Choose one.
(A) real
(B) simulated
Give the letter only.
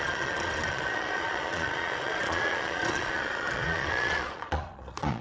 B